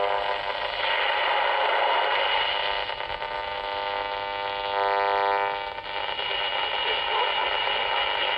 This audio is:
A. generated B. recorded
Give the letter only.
B